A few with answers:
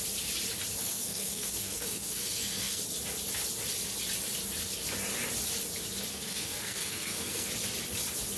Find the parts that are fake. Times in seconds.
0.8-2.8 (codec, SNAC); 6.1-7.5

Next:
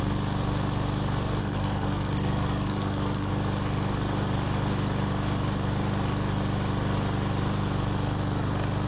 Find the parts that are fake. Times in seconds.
1.4-3.3 (codec, SNAC)

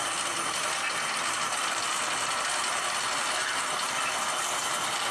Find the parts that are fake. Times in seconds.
none

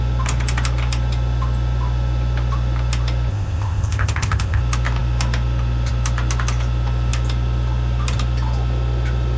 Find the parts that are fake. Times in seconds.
3.3-4.6 (codec, ZipCodec)

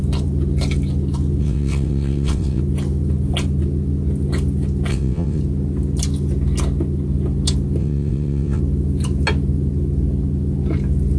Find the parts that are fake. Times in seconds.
1.4-2.6 (vocoder, WaveNeXt); 4.9-5.4; 7.8-8.6

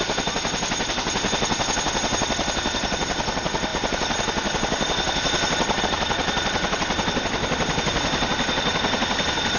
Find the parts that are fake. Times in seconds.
none

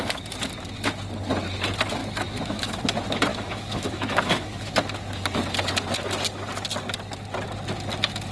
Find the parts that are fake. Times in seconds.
2.0-2.8 (autoencoder, DAC-VAE); 3.3-4.7

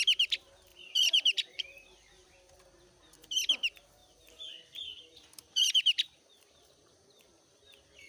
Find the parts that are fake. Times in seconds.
0.7-2.3 (vocoder, BigVGAN v2); 4.0-7.6